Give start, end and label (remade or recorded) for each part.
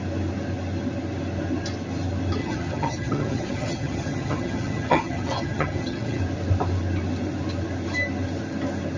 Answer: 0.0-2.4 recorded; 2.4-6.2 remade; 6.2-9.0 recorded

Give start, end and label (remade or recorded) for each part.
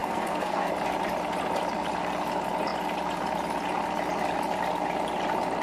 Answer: 0.0-0.7 remade; 0.7-5.6 recorded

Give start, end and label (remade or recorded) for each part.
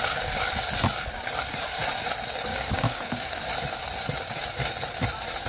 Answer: 0.0-2.5 recorded; 2.5-3.4 remade; 3.4-5.5 recorded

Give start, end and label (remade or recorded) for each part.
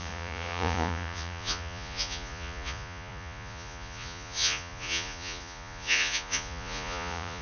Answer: 0.0-7.4 remade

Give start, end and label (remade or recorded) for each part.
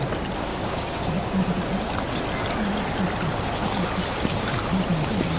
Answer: 0.0-0.5 recorded; 0.5-1.3 remade; 1.3-5.4 recorded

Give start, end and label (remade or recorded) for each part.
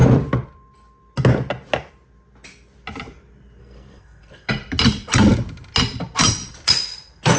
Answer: 0.0-3.6 recorded; 3.6-4.5 remade; 4.5-7.4 recorded